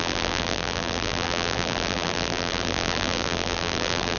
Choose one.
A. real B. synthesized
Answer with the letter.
B